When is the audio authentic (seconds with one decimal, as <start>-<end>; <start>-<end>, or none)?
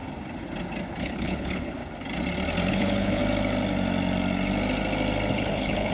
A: 0.0-1.0; 1.8-2.7; 3.2-5.3